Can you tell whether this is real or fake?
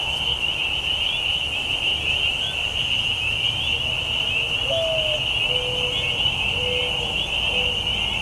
real